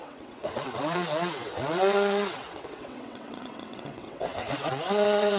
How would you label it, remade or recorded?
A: remade